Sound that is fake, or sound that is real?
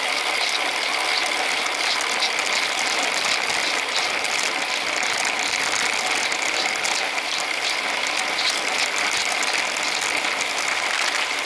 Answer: real